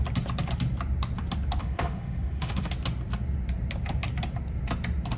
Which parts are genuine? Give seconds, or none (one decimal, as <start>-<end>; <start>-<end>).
0.0-1.6; 2.7-5.2